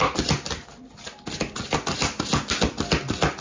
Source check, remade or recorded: recorded